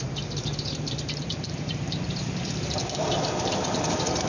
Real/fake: fake